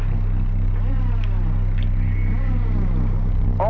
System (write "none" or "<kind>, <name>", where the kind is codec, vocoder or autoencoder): none